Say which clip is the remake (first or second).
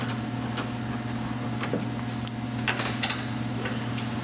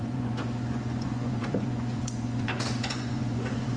second